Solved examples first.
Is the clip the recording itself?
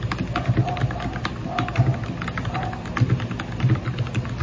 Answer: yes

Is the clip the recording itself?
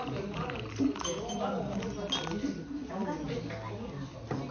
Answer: yes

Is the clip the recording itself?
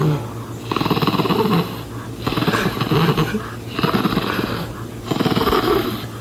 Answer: yes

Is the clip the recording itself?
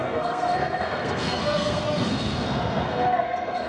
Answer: no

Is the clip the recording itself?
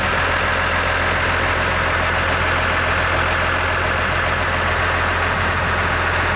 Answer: yes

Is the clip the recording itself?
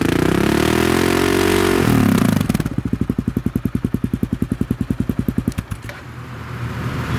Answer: yes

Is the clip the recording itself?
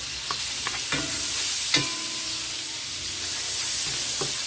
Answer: yes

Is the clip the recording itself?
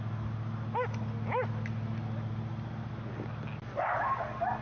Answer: yes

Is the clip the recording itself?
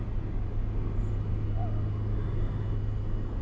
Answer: yes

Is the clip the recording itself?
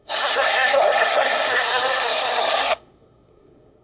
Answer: no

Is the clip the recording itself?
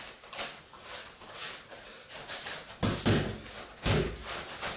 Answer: yes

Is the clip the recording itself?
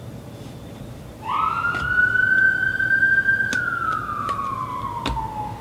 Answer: yes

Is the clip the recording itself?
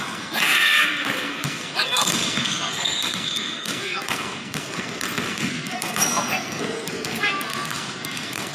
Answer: no